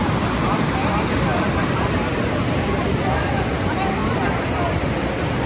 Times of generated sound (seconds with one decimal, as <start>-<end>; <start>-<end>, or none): none